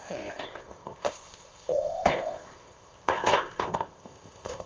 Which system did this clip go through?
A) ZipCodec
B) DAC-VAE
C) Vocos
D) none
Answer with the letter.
A